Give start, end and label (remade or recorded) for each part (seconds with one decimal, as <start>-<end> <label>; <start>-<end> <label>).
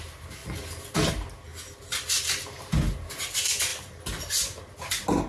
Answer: 0.0-3.7 recorded; 3.7-4.3 remade; 4.3-5.3 recorded